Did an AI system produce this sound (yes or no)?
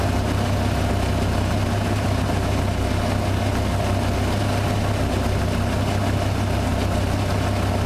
no